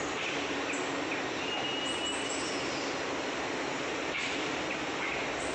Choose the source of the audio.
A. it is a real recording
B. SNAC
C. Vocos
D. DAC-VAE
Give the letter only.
A